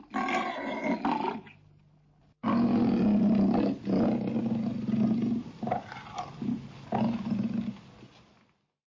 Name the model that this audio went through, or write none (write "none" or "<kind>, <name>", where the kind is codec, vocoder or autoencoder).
none